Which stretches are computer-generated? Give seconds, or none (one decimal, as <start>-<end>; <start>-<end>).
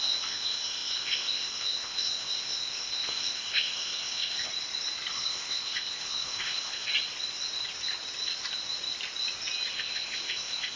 0.0-4.5; 5.1-6.9; 9.7-10.8